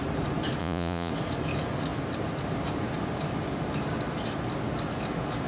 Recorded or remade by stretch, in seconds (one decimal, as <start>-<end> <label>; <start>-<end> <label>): 0.0-0.6 recorded; 0.6-1.1 remade; 1.1-5.5 recorded